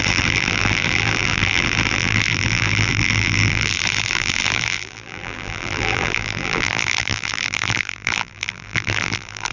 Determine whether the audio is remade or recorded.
remade